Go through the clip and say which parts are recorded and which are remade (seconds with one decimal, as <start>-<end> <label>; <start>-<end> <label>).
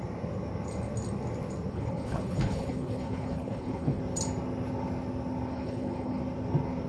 0.0-1.7 recorded; 1.7-4.0 remade; 4.0-5.5 recorded; 5.5-6.2 remade; 6.2-6.9 recorded